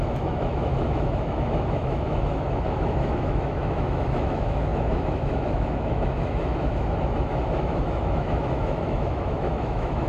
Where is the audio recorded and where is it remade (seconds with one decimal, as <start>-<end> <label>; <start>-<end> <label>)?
0.0-10.1 remade